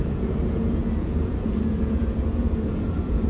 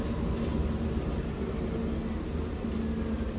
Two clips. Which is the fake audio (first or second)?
first